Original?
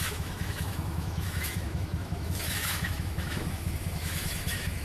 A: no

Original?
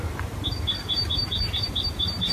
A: yes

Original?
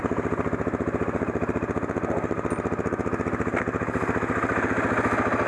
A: yes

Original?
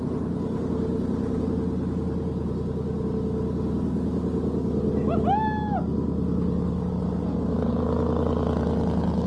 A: yes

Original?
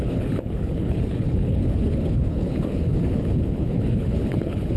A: no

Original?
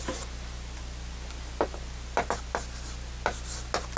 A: yes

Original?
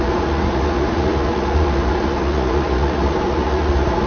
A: no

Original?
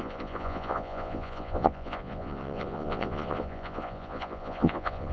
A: no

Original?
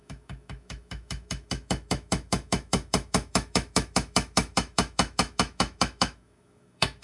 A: no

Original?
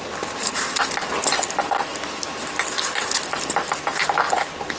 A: yes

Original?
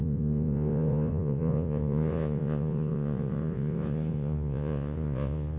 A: no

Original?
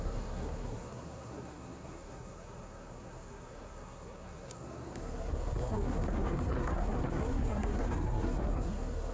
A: no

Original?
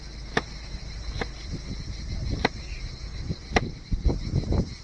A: yes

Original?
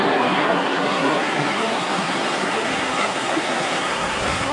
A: no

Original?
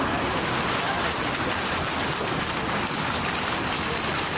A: yes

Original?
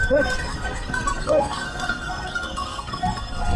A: no